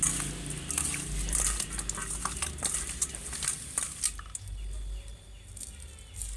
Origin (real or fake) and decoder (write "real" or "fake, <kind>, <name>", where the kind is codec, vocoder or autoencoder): real